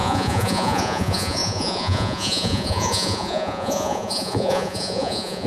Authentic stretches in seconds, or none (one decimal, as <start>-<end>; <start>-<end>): none